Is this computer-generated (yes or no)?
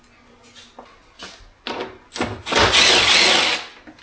no